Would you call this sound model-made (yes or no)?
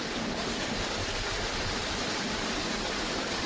no